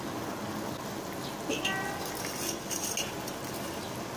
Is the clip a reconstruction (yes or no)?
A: no